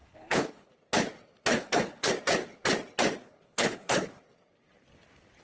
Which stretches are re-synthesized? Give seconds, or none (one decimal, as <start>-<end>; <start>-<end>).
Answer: 0.0-0.7; 1.5-2.1; 3.2-4.2